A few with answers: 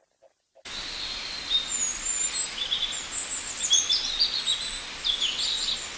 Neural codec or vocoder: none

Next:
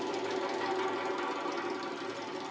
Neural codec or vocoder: none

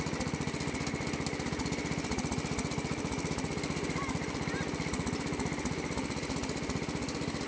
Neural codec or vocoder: none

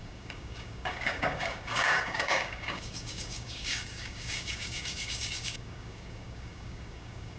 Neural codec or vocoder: codec, DAC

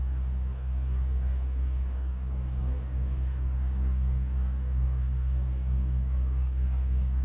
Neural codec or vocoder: codec, DAC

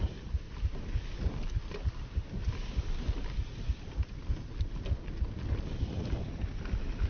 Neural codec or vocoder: none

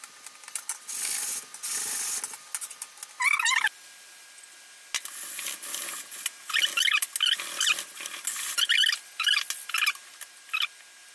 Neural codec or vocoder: none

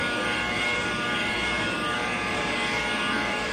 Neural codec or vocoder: codec, DAC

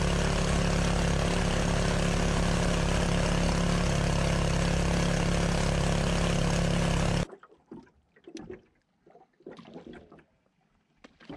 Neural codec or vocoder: none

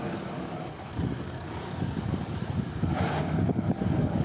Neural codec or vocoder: codec, DAC